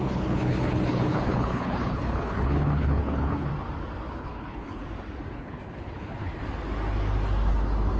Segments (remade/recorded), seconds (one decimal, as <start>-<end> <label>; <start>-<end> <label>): 0.0-3.5 remade; 3.5-4.1 recorded; 4.1-4.8 remade; 4.8-5.3 recorded; 5.3-6.4 remade; 6.4-8.0 recorded